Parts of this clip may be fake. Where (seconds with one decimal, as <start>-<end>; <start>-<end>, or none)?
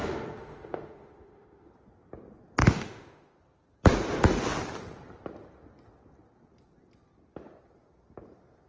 0.0-1.7; 2.6-3.4